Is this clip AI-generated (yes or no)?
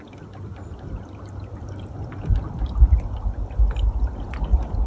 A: no